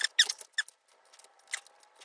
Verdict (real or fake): real